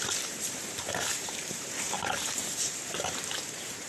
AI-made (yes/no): yes